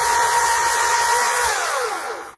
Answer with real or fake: fake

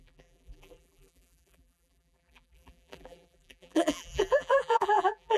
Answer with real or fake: fake